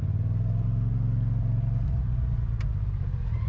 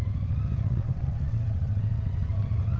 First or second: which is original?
first